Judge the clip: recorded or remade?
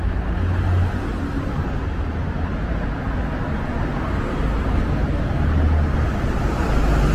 recorded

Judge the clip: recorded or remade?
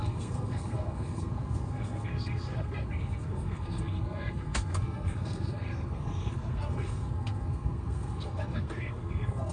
remade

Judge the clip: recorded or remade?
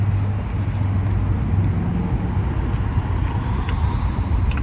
recorded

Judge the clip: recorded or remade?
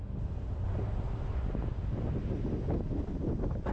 recorded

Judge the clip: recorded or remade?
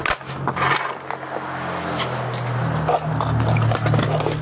recorded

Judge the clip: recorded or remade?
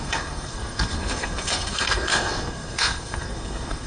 remade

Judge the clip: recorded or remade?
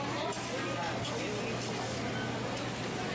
recorded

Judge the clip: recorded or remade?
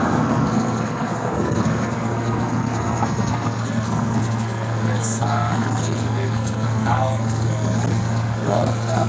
remade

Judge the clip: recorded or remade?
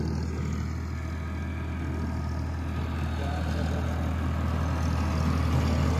recorded